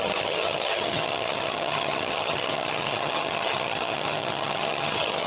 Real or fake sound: fake